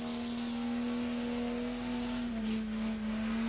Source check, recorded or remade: recorded